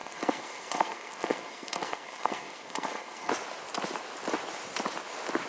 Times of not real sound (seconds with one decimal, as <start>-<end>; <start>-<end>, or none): 0.0-3.3